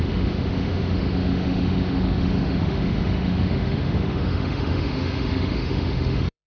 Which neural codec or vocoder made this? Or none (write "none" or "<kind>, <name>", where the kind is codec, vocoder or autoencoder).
autoencoder, DAC-VAE